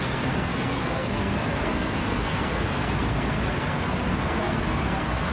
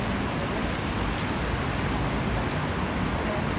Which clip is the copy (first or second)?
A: first